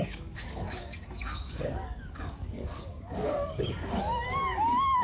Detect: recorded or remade remade